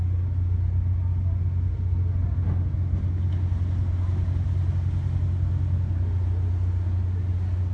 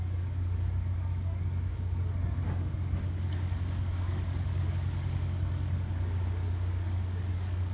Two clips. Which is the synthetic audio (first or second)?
second